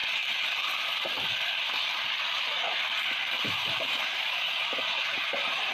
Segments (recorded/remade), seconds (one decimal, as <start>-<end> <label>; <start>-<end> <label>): 0.0-3.4 recorded; 3.4-5.7 remade